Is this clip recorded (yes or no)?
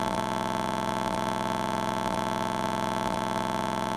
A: no